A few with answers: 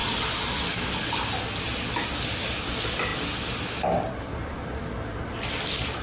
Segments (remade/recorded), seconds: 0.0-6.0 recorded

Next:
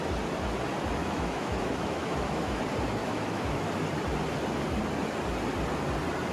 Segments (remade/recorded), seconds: 0.0-1.0 recorded; 1.0-2.6 remade; 2.6-3.0 recorded; 3.0-3.7 remade; 3.7-6.3 recorded

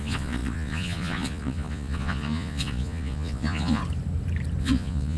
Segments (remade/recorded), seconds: 0.0-3.8 remade; 3.8-4.6 recorded; 4.6-5.2 remade